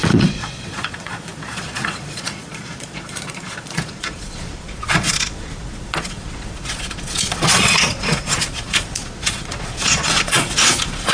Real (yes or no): no